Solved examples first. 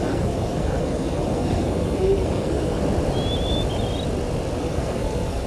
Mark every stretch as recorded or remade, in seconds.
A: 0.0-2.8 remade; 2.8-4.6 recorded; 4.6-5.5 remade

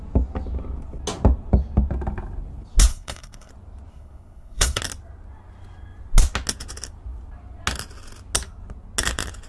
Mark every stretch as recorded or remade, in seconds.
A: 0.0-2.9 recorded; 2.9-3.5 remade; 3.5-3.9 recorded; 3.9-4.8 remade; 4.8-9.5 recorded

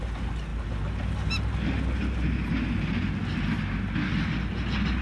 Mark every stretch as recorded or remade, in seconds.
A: 0.0-5.0 recorded

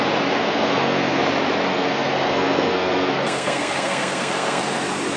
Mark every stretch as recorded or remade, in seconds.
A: 0.0-0.4 recorded; 0.4-1.2 remade; 1.2-1.7 recorded; 1.7-4.8 remade; 4.8-5.2 recorded

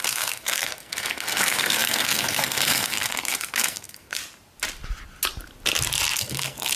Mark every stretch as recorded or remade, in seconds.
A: 0.0-4.2 remade; 4.2-6.2 recorded; 6.2-6.8 remade